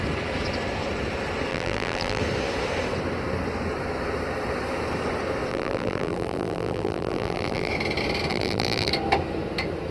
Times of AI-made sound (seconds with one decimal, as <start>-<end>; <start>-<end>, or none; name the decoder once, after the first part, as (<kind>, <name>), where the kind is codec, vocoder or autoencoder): 1.5-2.2 (vocoder, BigVGAN v2); 5.5-7.7; 8.3-8.9